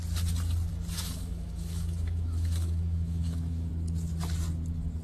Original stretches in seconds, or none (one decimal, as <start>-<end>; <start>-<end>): 0.0-0.7; 3.7-5.0

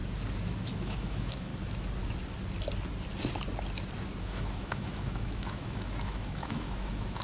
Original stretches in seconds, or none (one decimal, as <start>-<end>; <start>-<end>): 0.0-0.8; 1.5-4.2

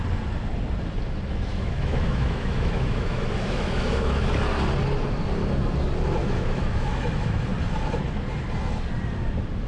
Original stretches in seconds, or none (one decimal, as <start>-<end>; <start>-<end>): 0.0-1.5; 4.3-6.2; 7.4-9.7

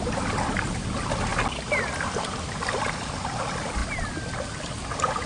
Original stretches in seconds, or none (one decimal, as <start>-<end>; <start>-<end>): 0.0-5.3

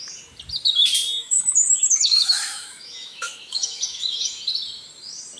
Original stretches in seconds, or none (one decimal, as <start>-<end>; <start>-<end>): 0.0-1.2; 4.4-5.4

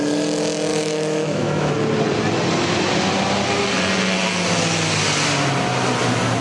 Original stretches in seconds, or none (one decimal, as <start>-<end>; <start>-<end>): 0.0-0.7; 1.7-6.4

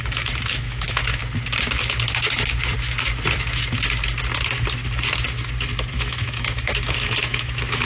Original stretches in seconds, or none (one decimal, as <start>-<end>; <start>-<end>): 1.2-5.9